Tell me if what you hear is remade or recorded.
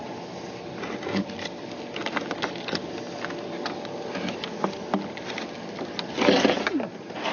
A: recorded